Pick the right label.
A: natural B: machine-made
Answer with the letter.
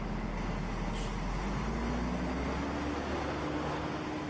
A